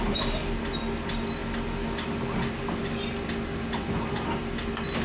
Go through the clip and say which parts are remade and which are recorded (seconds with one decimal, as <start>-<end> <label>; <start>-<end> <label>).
0.0-5.0 recorded